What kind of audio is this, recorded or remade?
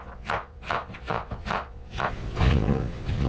remade